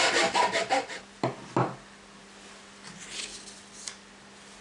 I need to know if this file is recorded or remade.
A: recorded